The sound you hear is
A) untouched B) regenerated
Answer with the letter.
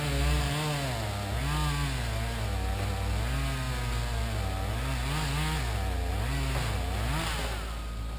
A